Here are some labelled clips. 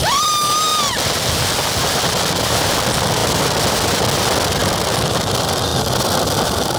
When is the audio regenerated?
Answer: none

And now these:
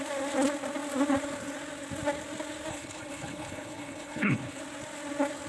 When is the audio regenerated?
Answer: 2.7-4.6 (codec, HILCodec)

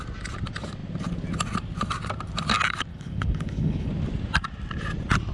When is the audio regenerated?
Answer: 2.9-3.9 (codec, HILCodec)